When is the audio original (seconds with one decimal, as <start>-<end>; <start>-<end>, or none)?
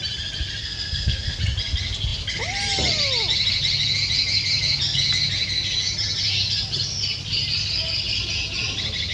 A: 0.0-0.6; 1.4-9.1